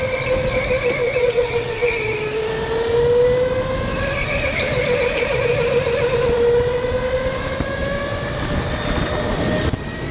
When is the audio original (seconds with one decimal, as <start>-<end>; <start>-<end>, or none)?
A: 0.0-1.0; 1.9-10.1